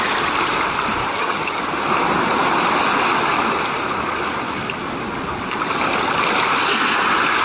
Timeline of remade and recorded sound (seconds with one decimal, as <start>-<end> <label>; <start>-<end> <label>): 0.0-1.1 recorded; 1.1-1.6 remade; 1.6-7.4 recorded